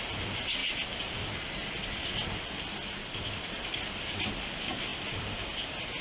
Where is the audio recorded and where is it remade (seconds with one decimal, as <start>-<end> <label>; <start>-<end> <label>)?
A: 0.0-6.0 recorded

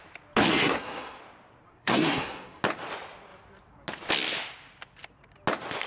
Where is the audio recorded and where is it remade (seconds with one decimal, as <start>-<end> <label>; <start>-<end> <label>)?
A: 0.0-0.5 recorded; 0.5-1.2 remade; 1.2-1.7 recorded; 1.7-2.6 remade; 2.6-5.9 recorded